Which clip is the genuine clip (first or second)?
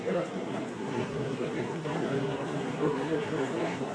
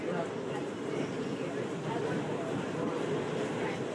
second